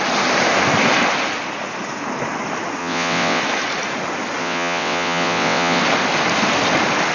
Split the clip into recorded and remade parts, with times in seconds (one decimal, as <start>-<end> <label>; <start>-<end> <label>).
0.0-2.8 recorded; 2.8-3.4 remade; 3.4-4.4 recorded; 4.4-5.8 remade; 5.8-7.1 recorded